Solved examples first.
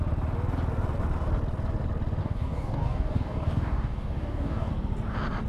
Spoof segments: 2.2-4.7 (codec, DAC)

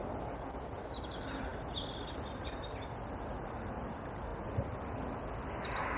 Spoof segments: 0.0-0.8 (vocoder, BigVGAN v2); 1.5-2.9; 4.3-5.5